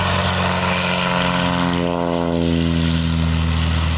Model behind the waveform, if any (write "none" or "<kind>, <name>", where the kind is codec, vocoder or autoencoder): none